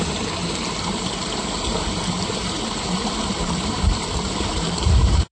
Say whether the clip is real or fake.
fake